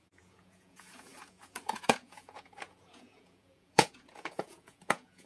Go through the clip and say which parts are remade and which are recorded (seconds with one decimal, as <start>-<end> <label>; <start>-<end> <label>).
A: 0.0-5.3 remade